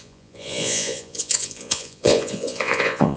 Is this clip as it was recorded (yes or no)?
no